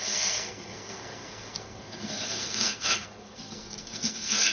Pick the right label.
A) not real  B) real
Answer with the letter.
A